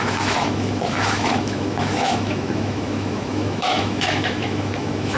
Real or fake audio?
fake